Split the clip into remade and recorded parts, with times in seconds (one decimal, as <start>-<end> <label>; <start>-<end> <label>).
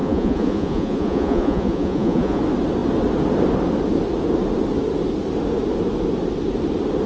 0.0-2.4 remade; 2.4-7.1 recorded